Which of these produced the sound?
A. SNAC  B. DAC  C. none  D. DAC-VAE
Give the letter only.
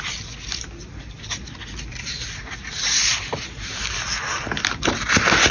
C